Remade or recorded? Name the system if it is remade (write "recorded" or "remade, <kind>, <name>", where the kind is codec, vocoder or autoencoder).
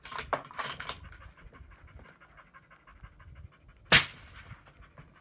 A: recorded